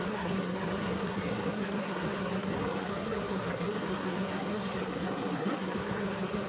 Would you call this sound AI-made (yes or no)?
yes